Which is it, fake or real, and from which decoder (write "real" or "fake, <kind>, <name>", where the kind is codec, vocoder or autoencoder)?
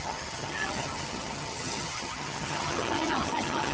fake, vocoder, HiFi-GAN